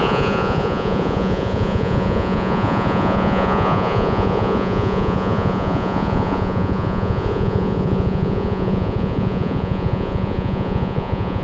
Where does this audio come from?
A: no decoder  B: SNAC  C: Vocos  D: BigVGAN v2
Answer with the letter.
C